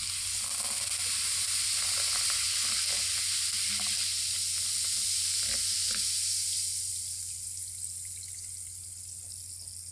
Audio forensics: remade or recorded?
recorded